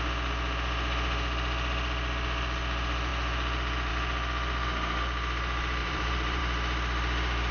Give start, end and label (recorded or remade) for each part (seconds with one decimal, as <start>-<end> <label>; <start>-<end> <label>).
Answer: 0.0-5.8 recorded; 5.8-6.4 remade; 6.4-7.5 recorded